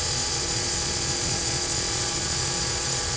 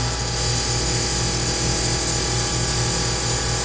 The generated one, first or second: first